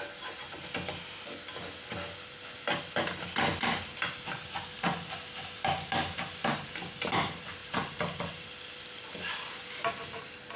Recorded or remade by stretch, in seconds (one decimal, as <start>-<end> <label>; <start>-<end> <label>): 0.0-10.6 recorded